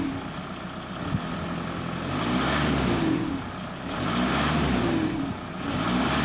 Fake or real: real